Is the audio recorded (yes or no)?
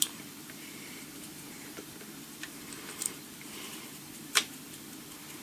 no